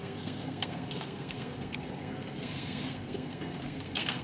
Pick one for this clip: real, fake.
fake